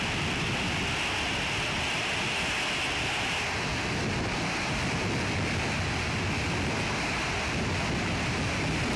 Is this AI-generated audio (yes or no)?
no